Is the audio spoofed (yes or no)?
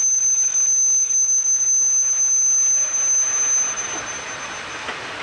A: no